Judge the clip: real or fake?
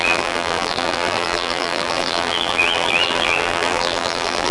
fake